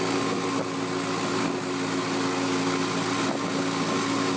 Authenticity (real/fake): real